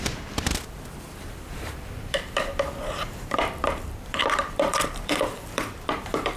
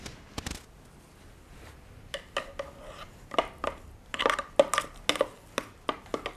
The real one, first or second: second